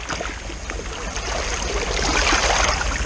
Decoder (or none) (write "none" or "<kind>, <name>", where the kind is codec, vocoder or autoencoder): none